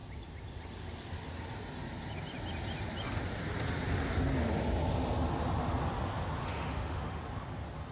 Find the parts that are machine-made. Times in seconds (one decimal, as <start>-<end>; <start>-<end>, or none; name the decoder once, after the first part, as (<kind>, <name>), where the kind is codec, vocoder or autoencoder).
6.4-7.2 (autoencoder, DAC-VAE)